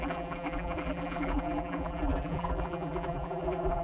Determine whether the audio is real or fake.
fake